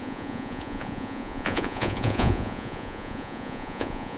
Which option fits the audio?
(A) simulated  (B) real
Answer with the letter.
A